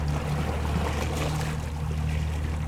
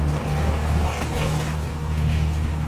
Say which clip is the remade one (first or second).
second